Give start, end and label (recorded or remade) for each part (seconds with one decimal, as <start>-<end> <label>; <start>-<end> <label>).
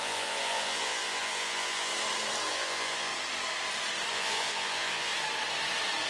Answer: 0.0-1.9 remade; 1.9-2.5 recorded; 2.5-3.1 remade; 3.1-4.1 recorded; 4.1-5.1 remade; 5.1-6.1 recorded